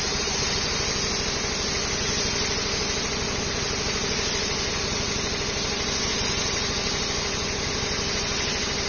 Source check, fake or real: real